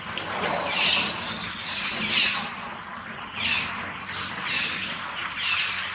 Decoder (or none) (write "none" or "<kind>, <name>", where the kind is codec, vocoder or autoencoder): none